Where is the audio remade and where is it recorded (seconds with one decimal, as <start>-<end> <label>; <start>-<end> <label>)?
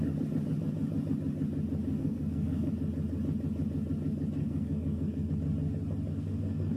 0.0-2.0 recorded; 2.0-2.7 remade; 2.7-4.4 recorded; 4.4-5.3 remade; 5.3-6.1 recorded; 6.1-6.8 remade